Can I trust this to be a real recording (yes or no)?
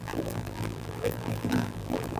no